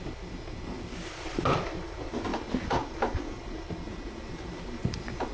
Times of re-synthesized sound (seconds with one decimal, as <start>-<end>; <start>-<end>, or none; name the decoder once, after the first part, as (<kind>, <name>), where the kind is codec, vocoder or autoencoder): 0.0-5.3 (vocoder, BigVGAN v2)